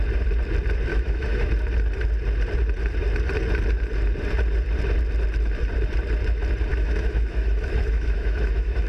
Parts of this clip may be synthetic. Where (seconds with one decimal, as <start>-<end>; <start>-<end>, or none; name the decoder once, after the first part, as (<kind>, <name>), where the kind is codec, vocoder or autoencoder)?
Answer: 0.9-1.5 (autoencoder, DAC-VAE); 6.7-8.9